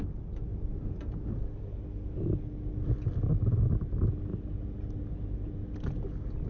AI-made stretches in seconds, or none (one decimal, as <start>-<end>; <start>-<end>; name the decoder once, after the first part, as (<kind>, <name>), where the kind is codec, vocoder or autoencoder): none